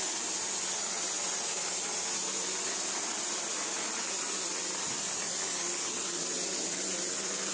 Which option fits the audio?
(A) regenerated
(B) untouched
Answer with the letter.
B